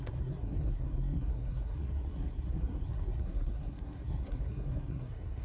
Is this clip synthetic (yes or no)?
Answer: yes